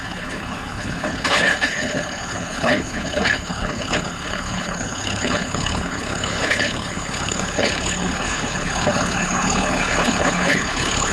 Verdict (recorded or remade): remade